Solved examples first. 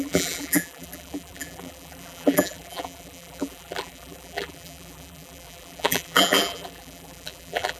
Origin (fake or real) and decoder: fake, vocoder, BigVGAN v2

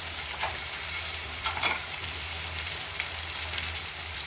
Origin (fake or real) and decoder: fake, vocoder, BigVGAN v2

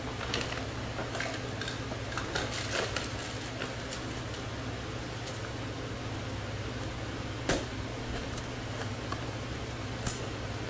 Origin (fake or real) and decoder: real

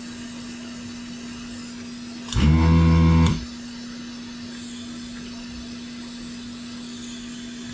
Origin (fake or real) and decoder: real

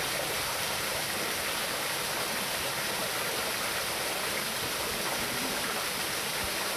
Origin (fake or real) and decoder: fake, vocoder, BigVGAN v2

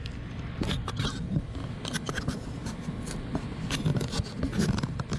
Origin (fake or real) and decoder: real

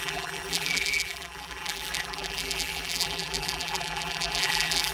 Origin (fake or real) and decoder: fake, vocoder, BigVGAN v2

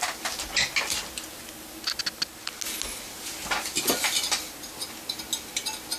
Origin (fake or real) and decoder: real